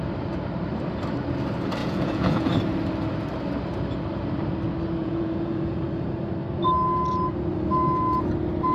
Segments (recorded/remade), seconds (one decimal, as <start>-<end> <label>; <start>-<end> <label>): 0.0-1.8 recorded; 1.8-2.5 remade; 2.5-5.0 recorded; 5.0-5.8 remade; 5.8-8.7 recorded